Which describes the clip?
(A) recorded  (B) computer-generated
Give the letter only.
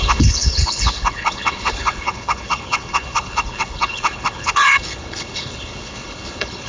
B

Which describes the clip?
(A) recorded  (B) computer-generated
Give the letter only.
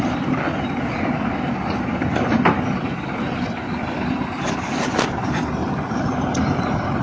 A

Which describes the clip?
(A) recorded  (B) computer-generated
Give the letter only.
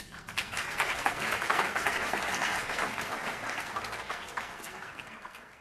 B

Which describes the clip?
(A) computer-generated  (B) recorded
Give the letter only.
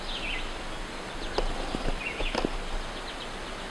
B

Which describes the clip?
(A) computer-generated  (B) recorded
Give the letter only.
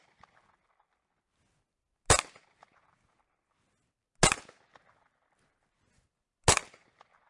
B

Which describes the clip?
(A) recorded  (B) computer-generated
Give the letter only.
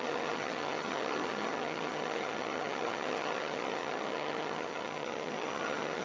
B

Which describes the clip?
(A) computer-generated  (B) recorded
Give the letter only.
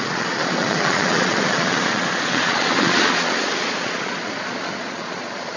A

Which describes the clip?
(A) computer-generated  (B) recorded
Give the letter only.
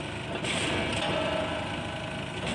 B